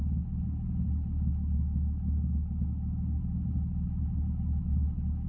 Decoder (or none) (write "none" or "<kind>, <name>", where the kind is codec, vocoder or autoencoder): none